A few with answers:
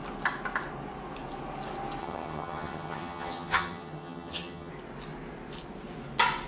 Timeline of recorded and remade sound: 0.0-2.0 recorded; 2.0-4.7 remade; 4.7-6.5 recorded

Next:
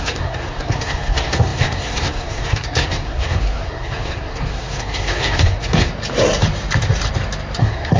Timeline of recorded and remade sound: 0.0-5.9 remade; 5.9-7.6 recorded; 7.6-8.0 remade

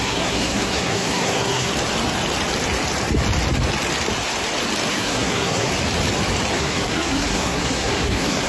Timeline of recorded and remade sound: 0.0-1.7 remade; 1.7-4.9 recorded; 4.9-5.7 remade; 5.7-6.6 recorded; 6.6-8.5 remade

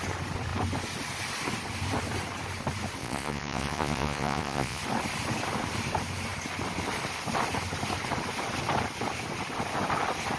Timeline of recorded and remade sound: 0.0-3.0 recorded; 3.0-4.8 remade; 4.8-10.4 recorded